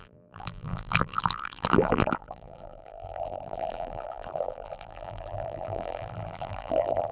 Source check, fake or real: fake